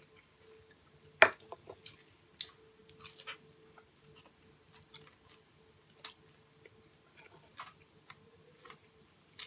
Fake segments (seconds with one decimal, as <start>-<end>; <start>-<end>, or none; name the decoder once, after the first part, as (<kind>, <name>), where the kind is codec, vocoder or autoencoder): none